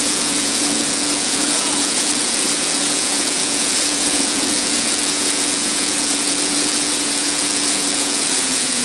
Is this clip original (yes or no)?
no